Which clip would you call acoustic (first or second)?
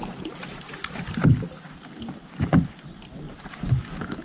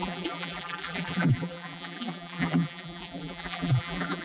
first